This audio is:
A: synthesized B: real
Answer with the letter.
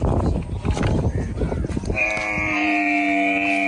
A